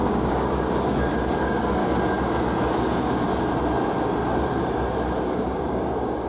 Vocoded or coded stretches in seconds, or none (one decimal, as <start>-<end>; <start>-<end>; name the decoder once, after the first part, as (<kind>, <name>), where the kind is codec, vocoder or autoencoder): 0.0-1.8 (codec, DAC); 2.7-3.3; 5.2-6.3

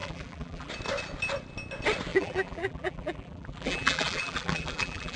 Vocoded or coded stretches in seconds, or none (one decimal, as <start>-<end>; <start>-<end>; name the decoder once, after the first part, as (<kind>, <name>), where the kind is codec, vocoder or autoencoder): 0.0-0.7 (vocoder, BigVGAN v2); 2.1-5.2

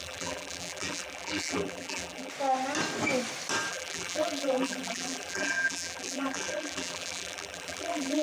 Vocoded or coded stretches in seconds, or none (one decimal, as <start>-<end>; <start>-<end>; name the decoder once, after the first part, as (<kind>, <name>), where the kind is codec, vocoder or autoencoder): 0.0-2.3 (vocoder, BigVGAN v2); 3.7-8.2

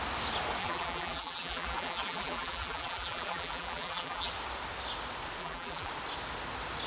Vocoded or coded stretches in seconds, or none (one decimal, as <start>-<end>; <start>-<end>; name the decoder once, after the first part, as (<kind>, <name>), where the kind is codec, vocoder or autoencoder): 0.6-4.3 (vocoder, BigVGAN v2); 5.4-5.9